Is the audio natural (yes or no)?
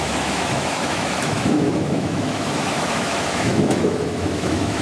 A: no